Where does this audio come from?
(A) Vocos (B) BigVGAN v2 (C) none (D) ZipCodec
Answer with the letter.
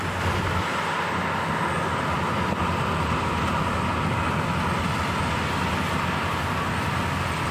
C